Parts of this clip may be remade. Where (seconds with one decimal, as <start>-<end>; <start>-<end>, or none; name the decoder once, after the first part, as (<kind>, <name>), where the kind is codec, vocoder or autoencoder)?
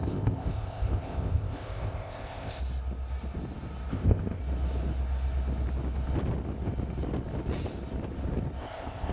0.0-2.6 (codec, ZipCodec); 3.9-4.4; 8.6-9.1